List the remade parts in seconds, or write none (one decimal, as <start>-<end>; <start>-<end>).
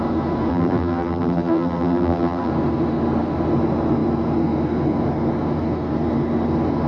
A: 0.5-2.5